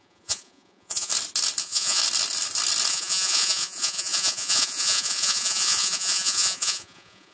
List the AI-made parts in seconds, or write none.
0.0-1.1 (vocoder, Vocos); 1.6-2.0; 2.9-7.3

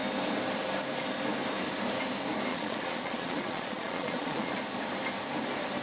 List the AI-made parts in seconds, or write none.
2.5-4.5 (vocoder, Vocos)

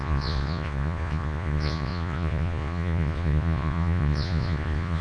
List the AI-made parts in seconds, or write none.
0.0-5.0 (vocoder, Vocos)

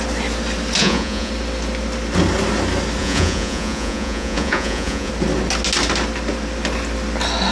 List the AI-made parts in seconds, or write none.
0.8-1.3 (vocoder, Vocos); 3.0-5.1